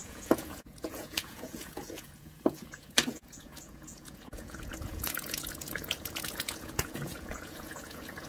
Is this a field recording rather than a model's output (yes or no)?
no